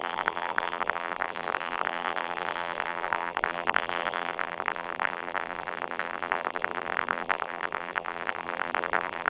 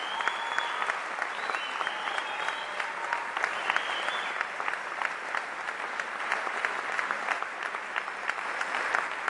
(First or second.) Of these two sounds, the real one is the second